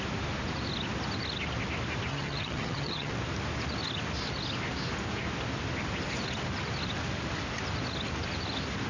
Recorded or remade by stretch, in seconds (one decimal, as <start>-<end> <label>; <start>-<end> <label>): 0.0-2.1 recorded; 2.1-3.1 remade; 3.1-8.9 recorded